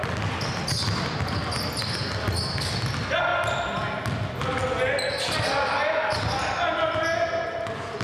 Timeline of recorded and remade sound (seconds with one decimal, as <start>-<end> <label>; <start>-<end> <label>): 0.0-8.0 recorded